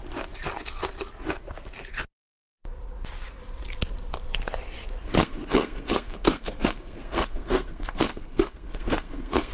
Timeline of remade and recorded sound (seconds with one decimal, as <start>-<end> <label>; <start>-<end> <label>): 0.0-5.0 recorded; 5.0-9.5 remade